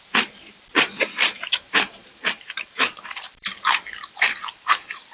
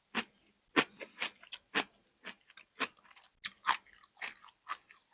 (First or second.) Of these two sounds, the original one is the second